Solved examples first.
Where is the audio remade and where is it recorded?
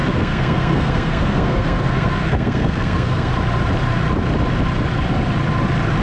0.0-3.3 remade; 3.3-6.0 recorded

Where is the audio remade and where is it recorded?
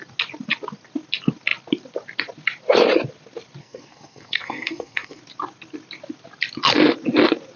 0.0-3.6 recorded; 3.6-5.2 remade; 5.2-7.6 recorded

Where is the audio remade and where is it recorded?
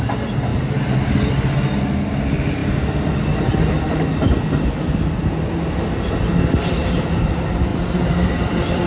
0.0-0.5 recorded; 0.5-1.5 remade; 1.5-7.7 recorded; 7.7-8.3 remade; 8.3-8.9 recorded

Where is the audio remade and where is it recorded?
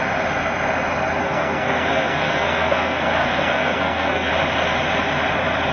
0.0-1.2 recorded; 1.2-4.3 remade; 4.3-5.7 recorded